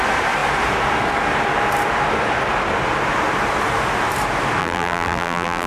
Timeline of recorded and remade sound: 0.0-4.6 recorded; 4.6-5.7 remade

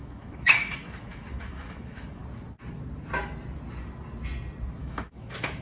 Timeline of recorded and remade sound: 0.0-2.2 remade; 2.2-4.8 recorded; 4.8-5.6 remade

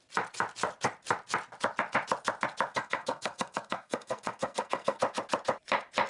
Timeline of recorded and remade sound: 0.0-2.7 recorded; 2.7-5.0 remade; 5.0-6.1 recorded

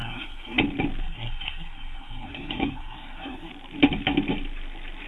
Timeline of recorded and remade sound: 0.0-0.6 remade; 0.6-1.0 recorded; 1.0-3.5 remade; 3.5-5.1 recorded

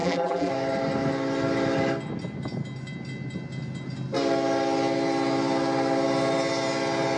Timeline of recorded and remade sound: 0.0-0.5 remade; 0.5-7.2 recorded

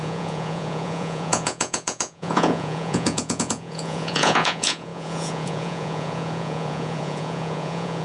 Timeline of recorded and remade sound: 0.0-8.0 remade